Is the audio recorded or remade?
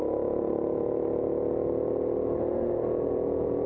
recorded